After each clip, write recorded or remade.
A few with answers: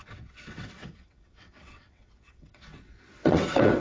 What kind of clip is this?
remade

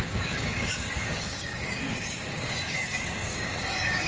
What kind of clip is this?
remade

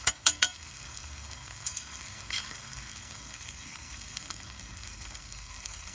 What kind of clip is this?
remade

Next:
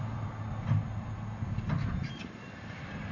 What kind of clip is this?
recorded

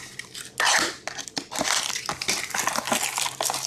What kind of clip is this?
recorded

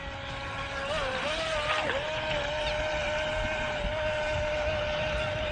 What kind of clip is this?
recorded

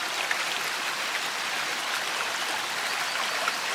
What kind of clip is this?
recorded